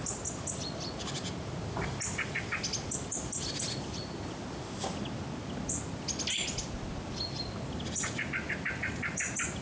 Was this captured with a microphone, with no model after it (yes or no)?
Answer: yes